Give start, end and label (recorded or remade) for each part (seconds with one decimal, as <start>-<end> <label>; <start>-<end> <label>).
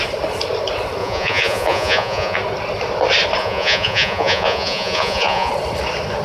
0.0-1.0 recorded; 1.0-2.4 remade; 2.4-3.4 recorded; 3.4-5.5 remade; 5.5-6.2 recorded